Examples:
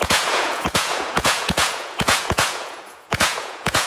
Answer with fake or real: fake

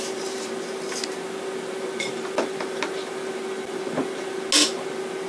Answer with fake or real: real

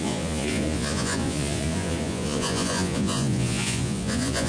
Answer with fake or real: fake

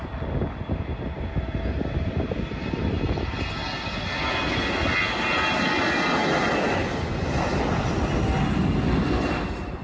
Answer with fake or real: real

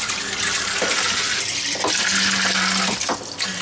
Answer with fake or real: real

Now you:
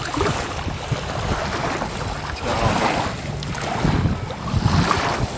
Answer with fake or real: real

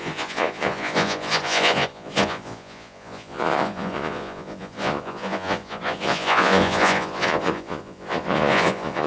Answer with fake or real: fake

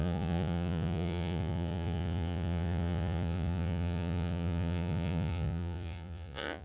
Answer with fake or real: fake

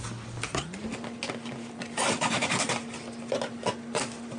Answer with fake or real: real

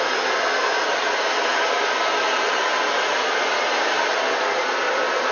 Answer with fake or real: real